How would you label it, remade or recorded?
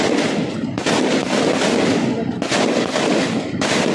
recorded